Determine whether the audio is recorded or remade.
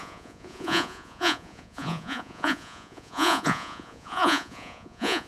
remade